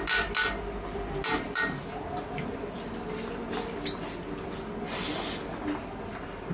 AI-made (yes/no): no